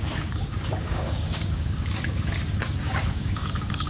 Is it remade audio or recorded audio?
remade